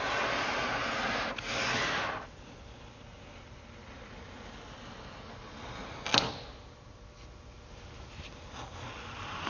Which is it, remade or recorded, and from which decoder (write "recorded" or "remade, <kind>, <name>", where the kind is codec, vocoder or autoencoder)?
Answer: recorded